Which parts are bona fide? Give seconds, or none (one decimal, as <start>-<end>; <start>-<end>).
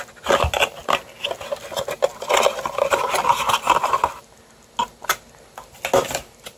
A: 0.0-6.6